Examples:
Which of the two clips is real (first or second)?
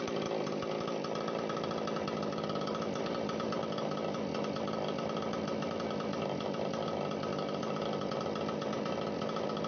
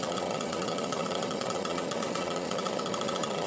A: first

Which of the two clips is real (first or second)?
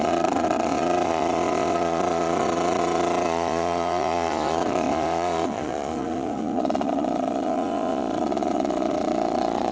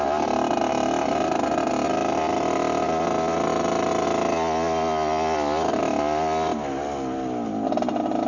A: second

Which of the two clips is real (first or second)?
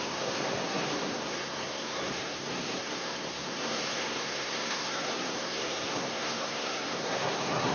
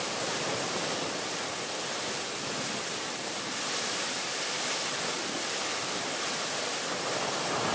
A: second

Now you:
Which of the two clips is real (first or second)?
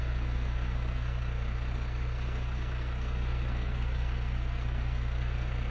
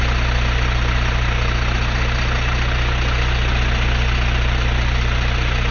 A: second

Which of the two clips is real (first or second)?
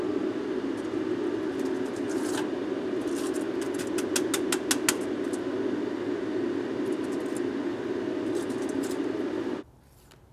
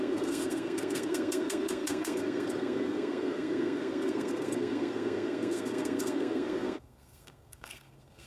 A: first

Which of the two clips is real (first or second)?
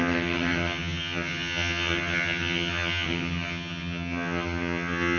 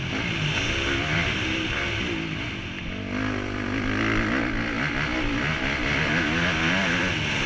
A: second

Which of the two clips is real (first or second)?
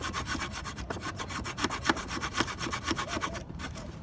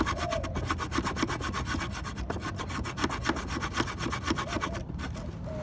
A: second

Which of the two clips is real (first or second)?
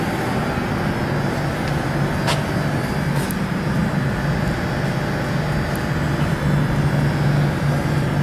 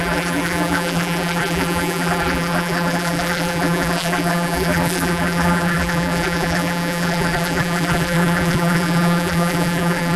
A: first